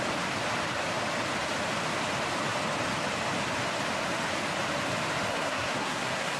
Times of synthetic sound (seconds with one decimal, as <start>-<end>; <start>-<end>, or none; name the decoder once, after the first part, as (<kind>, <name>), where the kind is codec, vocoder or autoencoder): 5.3-6.4 (codec, SNAC)